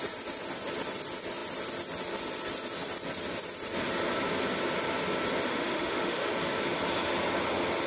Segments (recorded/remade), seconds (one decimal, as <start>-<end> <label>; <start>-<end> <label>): 0.0-5.5 recorded; 5.5-6.3 remade; 6.3-7.9 recorded